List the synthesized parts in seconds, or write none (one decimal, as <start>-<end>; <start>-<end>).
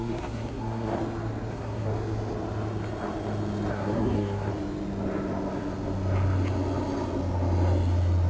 0.0-1.0; 1.5-1.9; 3.7-4.5